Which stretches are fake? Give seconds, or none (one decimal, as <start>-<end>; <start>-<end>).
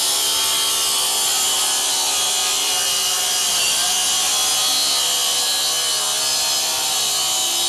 2.4-4.3